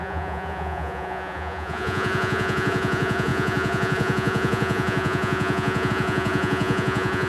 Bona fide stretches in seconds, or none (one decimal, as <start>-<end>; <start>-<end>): none

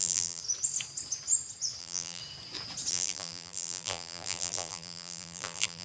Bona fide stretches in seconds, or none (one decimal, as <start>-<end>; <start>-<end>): 0.4-1.8; 2.2-2.9

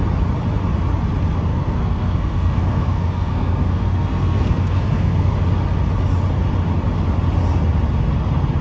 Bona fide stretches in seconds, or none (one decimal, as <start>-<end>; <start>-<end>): 0.0-1.5; 5.3-8.6

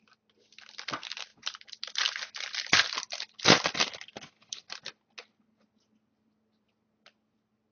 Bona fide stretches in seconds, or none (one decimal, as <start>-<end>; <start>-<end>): 0.0-7.7

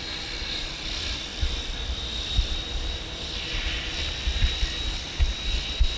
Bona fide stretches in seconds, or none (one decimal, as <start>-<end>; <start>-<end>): 0.0-6.0

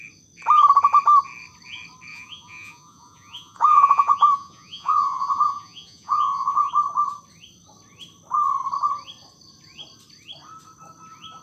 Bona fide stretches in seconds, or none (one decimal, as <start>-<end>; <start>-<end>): 0.0-2.1; 6.7-11.4

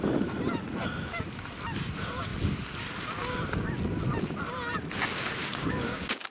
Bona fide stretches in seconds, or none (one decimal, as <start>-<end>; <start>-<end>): 0.0-5.4